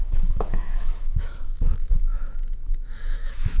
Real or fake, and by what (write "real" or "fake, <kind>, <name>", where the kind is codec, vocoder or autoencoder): fake, autoencoder, DAC-VAE